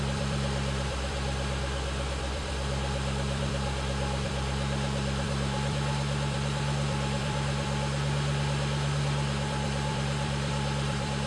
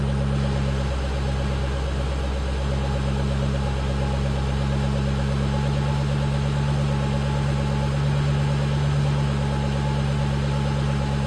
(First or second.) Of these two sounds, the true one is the second